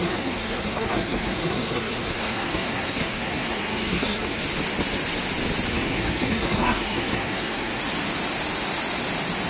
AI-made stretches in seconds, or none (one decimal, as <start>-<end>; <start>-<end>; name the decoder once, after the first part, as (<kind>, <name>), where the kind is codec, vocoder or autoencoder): 0.0-4.4 (codec, SNAC); 5.7-7.8